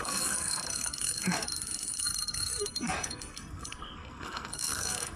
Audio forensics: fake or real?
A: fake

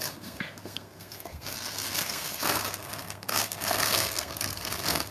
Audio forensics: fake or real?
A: fake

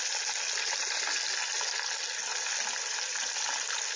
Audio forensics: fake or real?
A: real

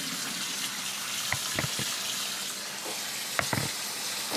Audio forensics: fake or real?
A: real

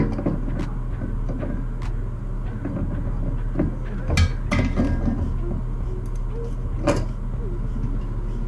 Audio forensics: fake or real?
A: real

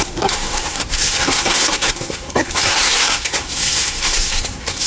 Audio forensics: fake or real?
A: fake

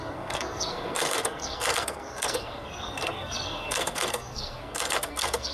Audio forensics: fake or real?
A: fake